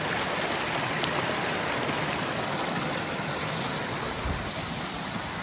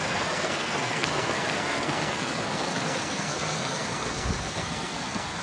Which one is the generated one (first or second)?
second